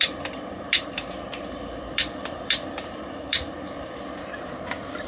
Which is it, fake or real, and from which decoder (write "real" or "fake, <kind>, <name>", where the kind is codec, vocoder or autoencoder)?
fake, vocoder, BigVGAN v2